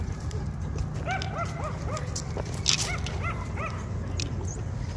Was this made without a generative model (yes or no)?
yes